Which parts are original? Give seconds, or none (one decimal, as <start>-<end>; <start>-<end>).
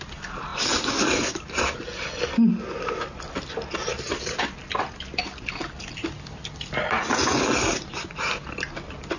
0.0-9.2